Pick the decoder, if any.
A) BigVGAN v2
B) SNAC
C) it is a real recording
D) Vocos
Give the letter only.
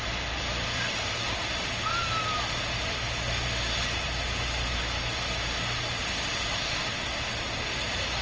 C